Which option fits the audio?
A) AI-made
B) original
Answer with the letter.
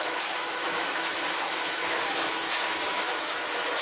A